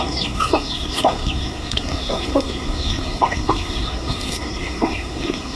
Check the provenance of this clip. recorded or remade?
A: remade